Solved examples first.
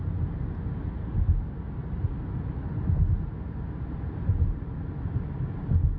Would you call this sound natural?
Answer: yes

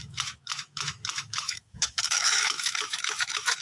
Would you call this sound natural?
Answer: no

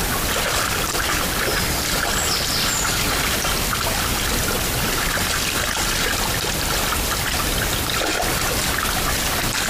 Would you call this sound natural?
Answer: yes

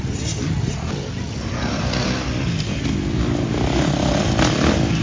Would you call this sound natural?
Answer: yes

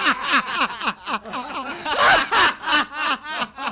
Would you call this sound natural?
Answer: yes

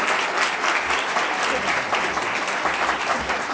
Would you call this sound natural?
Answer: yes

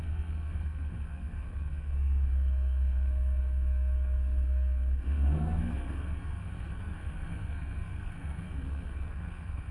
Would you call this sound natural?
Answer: no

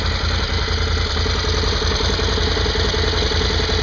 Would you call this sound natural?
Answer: yes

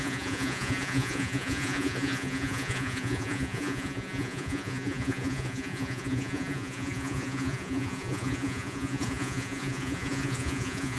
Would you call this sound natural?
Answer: no